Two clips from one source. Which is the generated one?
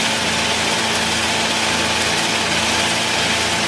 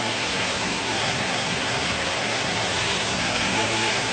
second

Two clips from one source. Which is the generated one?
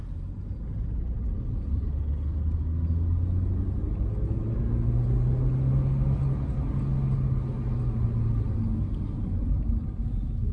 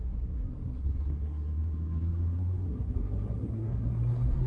second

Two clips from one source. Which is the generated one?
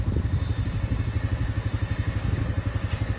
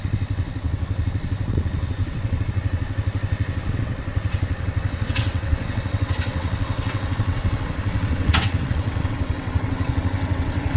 second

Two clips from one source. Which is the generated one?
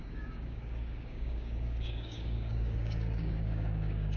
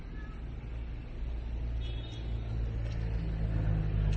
first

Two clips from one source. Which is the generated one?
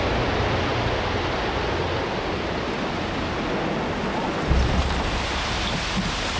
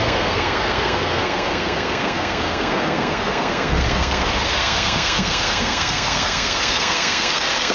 second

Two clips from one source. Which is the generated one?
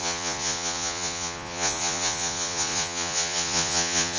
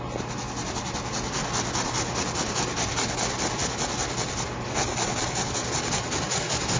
first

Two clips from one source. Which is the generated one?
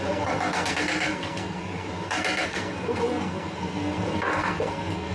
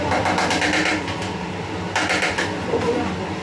first